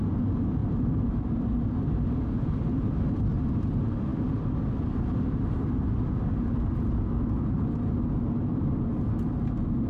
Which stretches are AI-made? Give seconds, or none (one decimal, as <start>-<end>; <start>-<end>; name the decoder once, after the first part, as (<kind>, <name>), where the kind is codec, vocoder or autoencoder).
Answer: none